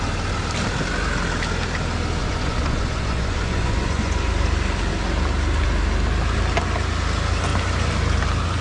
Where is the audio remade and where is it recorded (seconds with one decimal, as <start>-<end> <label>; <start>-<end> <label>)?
0.0-2.2 recorded; 2.2-4.3 remade; 4.3-8.6 recorded